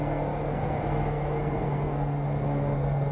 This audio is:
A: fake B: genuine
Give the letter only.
A